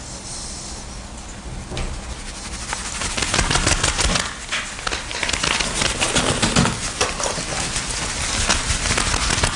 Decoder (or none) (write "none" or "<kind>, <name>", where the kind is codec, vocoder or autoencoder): none